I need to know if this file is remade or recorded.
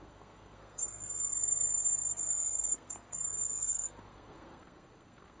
remade